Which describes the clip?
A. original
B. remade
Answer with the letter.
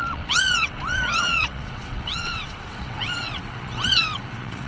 B